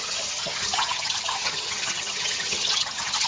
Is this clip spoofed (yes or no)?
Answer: yes